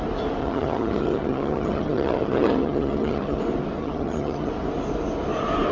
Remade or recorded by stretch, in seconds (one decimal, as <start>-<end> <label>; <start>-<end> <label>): 0.0-0.4 recorded; 0.4-3.4 remade; 3.4-3.8 recorded; 3.8-4.5 remade; 4.5-5.7 recorded